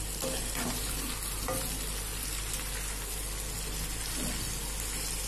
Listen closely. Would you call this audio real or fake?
real